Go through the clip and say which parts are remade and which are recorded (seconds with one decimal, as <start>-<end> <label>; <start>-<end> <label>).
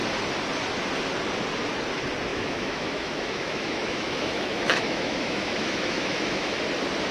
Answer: 0.0-2.3 recorded; 2.3-6.6 remade; 6.6-7.1 recorded